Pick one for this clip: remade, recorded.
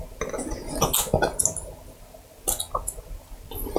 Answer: recorded